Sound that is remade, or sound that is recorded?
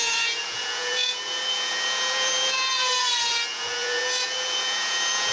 remade